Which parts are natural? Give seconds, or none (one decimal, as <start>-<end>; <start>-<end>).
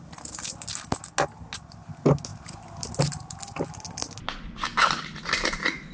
0.0-5.9